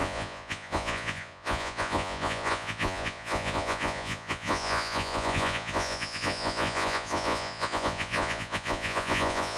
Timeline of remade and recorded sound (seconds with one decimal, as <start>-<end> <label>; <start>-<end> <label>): 0.0-9.6 remade